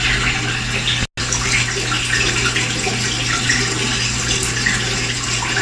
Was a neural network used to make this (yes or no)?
no